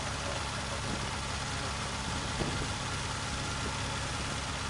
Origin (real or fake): real